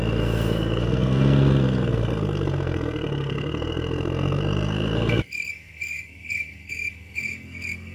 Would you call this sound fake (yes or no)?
yes